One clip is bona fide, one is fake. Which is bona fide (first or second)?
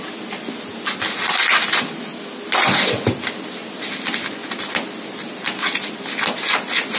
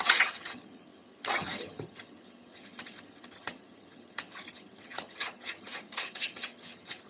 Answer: first